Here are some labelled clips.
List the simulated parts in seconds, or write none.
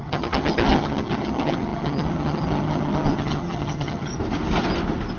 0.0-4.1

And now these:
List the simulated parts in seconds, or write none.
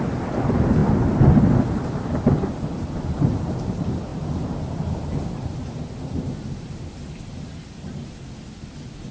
none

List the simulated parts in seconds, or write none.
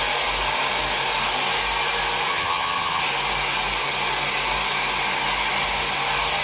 2.3-3.0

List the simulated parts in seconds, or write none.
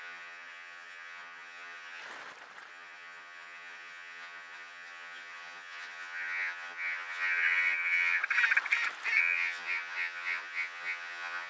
0.0-2.0; 2.7-8.2; 9.2-11.5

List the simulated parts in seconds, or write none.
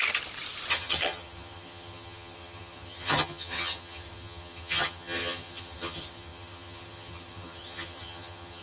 0.7-8.6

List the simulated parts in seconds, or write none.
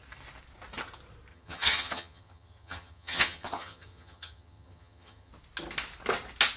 1.3-5.3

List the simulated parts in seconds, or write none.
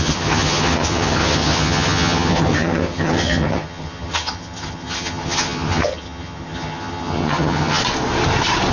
0.0-7.8